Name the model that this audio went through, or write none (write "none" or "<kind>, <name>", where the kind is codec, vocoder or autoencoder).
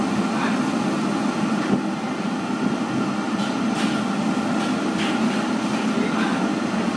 none